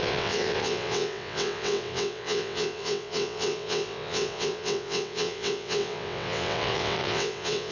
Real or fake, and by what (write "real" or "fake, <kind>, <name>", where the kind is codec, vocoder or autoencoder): fake, vocoder, WaveNeXt